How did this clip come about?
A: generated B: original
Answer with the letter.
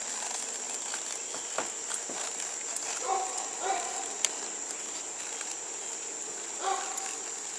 B